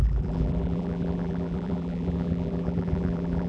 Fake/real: fake